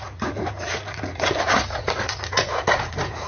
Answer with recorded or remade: remade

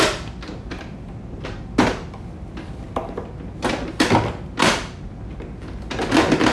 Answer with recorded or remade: recorded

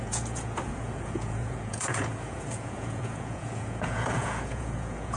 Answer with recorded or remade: remade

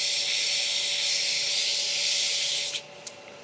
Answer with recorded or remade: recorded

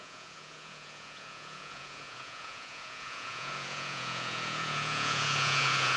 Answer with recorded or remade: remade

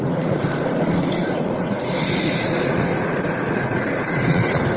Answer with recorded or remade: remade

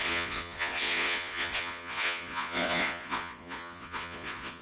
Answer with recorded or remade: remade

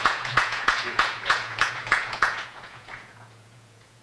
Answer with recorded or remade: remade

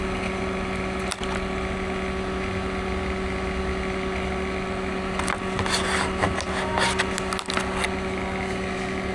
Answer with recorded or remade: recorded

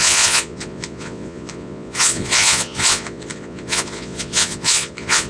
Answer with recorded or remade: remade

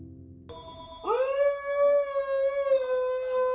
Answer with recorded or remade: recorded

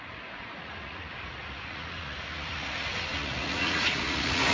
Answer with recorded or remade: remade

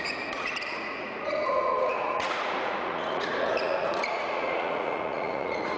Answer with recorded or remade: remade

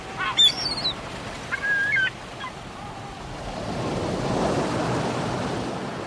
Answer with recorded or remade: recorded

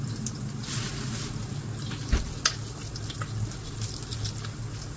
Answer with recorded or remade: recorded